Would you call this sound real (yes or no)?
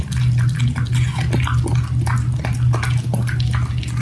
yes